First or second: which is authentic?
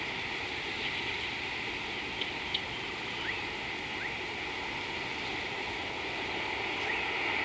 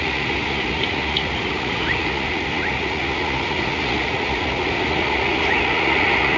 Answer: first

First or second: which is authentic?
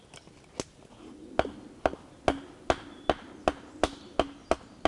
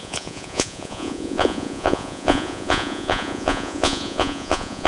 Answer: first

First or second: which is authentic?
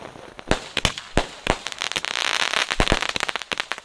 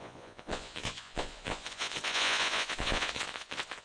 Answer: first